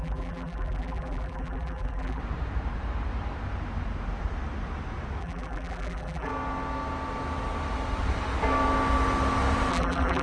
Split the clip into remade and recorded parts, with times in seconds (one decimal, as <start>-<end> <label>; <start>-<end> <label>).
0.0-2.2 remade; 2.2-5.2 recorded; 5.2-6.3 remade; 6.3-9.7 recorded; 9.7-10.2 remade